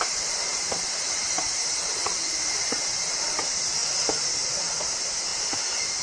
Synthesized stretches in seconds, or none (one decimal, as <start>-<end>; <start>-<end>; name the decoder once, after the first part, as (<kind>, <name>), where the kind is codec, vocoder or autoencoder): 0.0-3.8 (vocoder, BigVGAN v2); 4.6-6.0